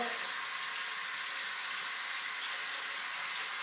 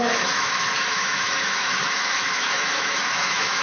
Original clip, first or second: first